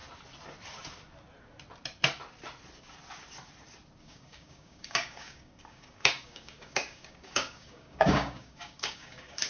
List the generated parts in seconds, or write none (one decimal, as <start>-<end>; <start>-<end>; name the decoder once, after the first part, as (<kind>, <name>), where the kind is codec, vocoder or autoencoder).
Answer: 4.0-9.5 (codec, DAC)